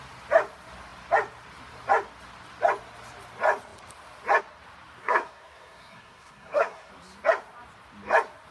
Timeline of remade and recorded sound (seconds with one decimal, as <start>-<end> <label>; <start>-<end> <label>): 0.0-5.0 recorded; 5.0-6.9 remade; 6.9-8.5 recorded